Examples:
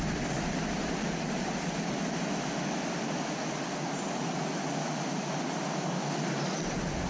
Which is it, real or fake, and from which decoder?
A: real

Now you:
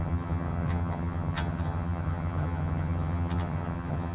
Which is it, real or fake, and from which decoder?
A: fake, vocoder, HiFi-GAN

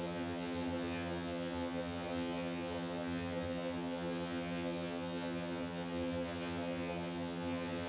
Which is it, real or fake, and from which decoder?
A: fake, vocoder, HiFi-GAN